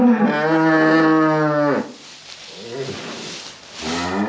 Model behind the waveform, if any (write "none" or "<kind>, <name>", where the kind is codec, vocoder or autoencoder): none